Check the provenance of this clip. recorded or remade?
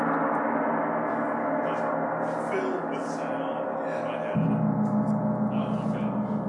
recorded